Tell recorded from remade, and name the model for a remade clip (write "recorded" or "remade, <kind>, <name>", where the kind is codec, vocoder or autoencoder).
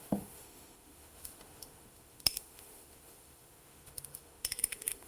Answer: remade, autoencoder, DAC-VAE